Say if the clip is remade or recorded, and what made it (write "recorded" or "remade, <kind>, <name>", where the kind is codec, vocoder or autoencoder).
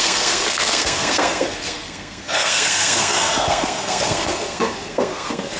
remade, codec, SNAC